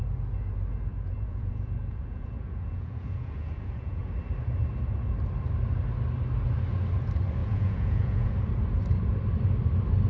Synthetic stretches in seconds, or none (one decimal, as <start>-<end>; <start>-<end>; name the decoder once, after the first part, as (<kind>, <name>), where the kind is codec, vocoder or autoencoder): 0.9-4.0 (vocoder, Vocos); 7.4-8.3